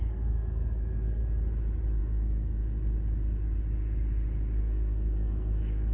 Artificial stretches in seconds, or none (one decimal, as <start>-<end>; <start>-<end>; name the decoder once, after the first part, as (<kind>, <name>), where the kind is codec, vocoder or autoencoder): 0.0-1.2 (codec, SNAC); 2.0-2.6; 4.6-5.9